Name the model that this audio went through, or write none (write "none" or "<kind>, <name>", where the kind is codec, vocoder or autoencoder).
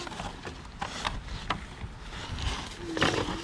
none